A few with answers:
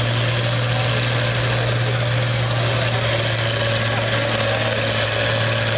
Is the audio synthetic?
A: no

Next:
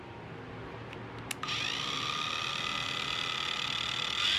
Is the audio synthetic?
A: no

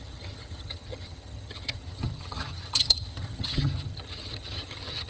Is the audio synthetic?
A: yes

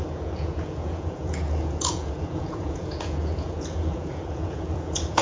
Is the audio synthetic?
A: yes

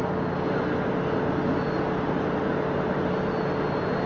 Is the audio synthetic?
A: no